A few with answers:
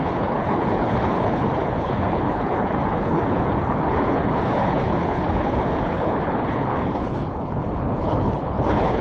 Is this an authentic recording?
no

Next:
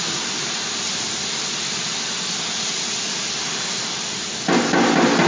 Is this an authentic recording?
yes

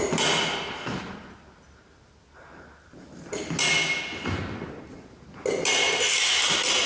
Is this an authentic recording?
yes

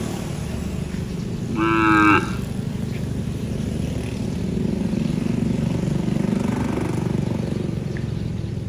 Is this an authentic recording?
yes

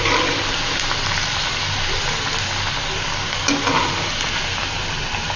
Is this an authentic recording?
yes